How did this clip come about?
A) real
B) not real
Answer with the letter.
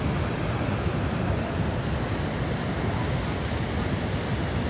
A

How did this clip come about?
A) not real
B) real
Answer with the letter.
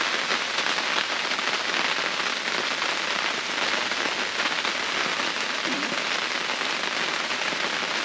B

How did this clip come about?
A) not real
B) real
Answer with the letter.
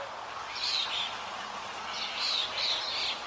B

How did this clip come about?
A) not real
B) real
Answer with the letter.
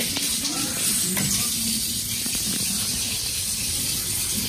B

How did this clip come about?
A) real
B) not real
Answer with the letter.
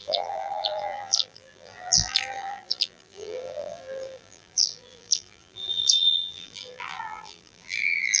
B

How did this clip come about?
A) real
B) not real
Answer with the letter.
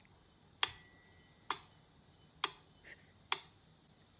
A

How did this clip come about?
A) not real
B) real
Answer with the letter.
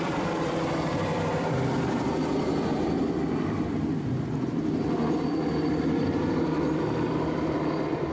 A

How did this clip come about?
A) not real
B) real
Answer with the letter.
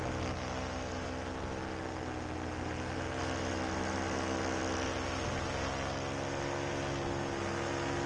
B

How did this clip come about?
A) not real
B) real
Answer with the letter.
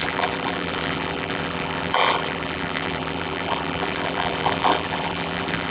A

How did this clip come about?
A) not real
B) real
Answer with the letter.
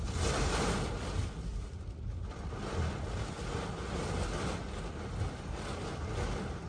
B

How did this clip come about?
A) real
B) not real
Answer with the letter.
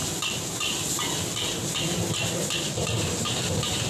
A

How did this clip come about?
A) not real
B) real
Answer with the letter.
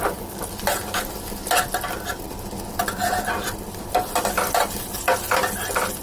B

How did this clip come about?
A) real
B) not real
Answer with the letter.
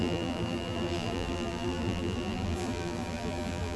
B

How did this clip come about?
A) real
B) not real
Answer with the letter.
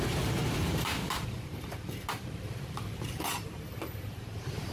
B